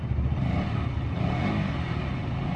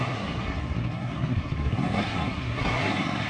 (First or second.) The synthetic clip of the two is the second